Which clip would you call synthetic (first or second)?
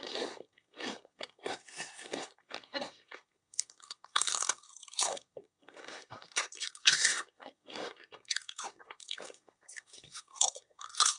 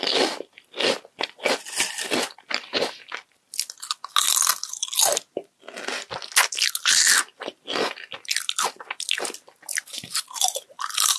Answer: first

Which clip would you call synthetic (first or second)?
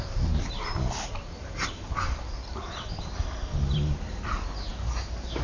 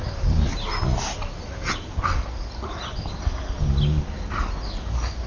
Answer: first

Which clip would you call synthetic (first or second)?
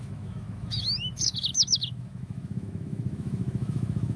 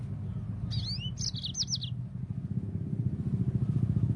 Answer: first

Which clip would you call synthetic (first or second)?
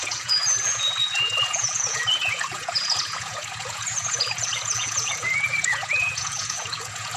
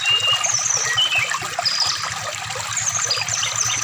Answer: first